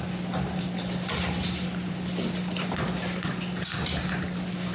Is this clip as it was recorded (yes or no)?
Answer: yes